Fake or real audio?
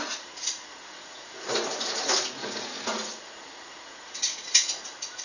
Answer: fake